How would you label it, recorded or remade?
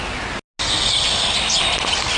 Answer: recorded